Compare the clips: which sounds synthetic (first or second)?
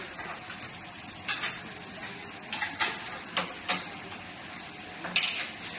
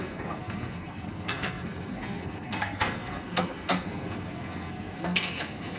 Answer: second